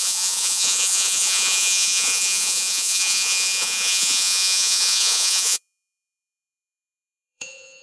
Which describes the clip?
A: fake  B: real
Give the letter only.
A